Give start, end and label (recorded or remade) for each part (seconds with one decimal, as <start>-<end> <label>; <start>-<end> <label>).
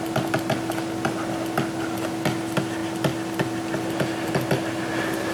0.0-5.3 recorded